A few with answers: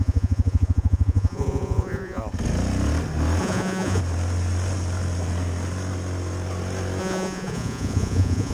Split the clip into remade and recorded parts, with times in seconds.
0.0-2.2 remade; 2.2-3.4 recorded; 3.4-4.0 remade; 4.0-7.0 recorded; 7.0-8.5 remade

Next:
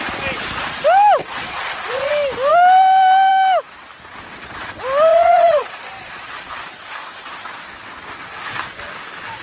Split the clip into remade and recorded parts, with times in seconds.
0.0-1.2 recorded; 1.2-2.1 remade; 2.1-5.1 recorded; 5.1-6.3 remade; 6.3-9.4 recorded

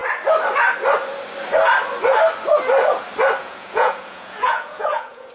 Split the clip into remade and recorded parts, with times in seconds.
0.0-3.4 recorded; 3.4-5.3 remade

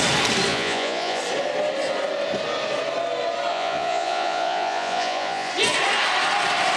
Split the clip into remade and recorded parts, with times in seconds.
0.0-0.5 recorded; 0.5-1.2 remade; 1.2-3.5 recorded; 3.5-5.5 remade; 5.5-6.8 recorded

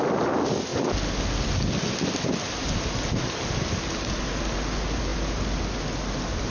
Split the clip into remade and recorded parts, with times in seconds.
0.0-6.5 recorded